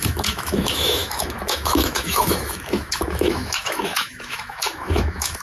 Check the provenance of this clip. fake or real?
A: fake